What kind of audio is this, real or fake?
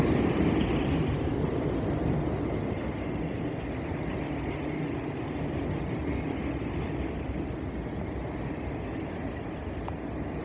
real